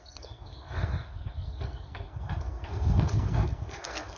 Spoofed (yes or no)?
yes